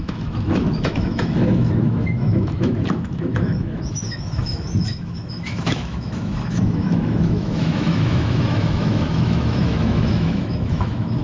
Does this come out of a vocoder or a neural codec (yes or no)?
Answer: yes